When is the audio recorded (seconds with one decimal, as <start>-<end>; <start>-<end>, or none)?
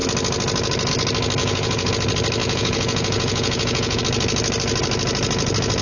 0.0-1.4; 1.9-2.4; 4.0-5.8